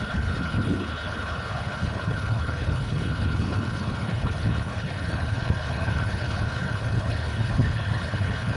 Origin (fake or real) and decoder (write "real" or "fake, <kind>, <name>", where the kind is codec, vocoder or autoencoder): fake, codec, HILCodec